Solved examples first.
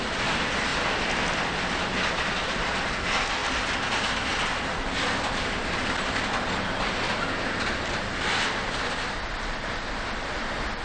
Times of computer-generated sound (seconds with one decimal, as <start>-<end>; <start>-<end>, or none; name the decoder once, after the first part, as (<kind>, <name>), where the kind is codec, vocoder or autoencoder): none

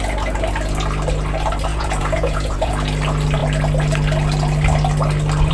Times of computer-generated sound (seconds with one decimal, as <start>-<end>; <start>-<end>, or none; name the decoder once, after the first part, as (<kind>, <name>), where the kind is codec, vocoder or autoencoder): 1.7-2.7 (vocoder, Vocos)

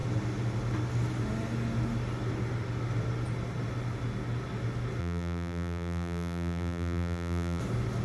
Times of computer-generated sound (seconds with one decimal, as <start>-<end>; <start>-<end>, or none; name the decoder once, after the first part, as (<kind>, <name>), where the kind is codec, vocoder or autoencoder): 5.0-7.6 (vocoder, BigVGAN v2)